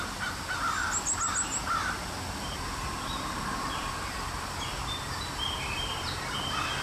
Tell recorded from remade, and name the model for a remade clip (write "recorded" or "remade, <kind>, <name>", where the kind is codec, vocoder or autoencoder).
recorded